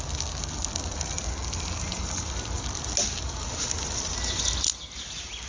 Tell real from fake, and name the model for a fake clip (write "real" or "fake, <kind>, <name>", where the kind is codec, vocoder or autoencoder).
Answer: real